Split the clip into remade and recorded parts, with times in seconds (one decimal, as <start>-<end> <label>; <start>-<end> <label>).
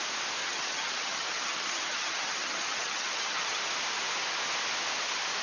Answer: 0.0-0.4 recorded; 0.4-3.6 remade; 3.6-5.4 recorded